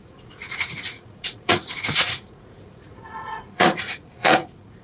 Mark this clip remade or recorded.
remade